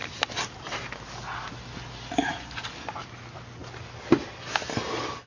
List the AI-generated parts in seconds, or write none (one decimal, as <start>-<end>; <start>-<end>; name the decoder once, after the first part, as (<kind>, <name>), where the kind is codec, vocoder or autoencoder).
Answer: none